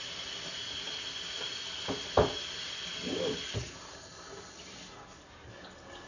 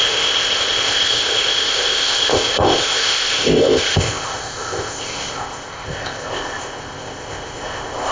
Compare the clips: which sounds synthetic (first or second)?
second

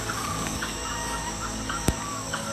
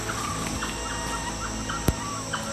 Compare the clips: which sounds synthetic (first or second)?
first